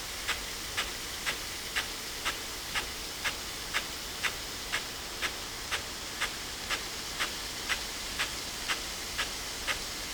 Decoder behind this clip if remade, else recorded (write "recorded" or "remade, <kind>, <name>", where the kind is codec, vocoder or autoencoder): recorded